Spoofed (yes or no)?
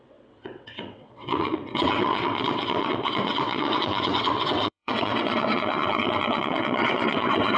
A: yes